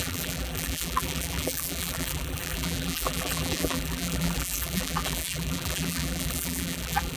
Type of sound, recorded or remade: remade